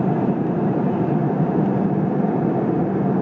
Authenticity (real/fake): real